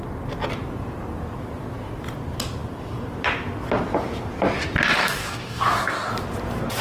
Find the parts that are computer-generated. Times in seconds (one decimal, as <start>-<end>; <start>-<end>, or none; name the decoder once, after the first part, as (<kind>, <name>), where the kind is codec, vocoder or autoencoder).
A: 5.0-6.1 (codec, DAC)